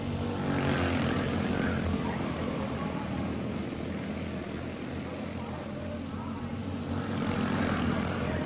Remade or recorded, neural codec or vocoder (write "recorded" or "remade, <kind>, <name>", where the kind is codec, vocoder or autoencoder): recorded